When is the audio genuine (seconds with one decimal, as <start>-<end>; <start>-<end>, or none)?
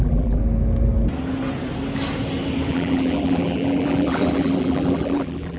0.4-2.7